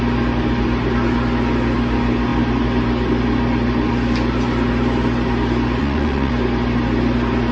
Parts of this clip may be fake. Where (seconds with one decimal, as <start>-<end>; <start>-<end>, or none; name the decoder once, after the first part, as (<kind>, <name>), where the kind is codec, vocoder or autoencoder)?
5.8-6.3 (vocoder, Vocos)